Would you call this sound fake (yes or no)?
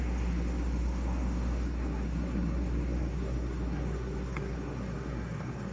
yes